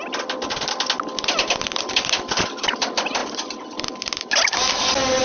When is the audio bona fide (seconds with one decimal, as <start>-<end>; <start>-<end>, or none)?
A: 0.0-5.2